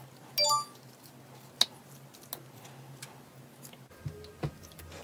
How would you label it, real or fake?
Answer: real